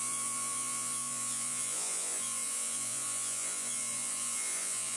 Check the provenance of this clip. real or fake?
fake